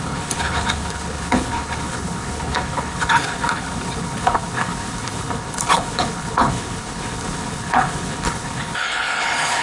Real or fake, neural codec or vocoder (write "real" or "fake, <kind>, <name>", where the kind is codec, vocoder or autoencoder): fake, codec, HILCodec